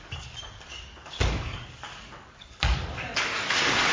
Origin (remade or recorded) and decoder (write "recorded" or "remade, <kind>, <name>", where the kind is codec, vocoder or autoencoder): remade, codec, DAC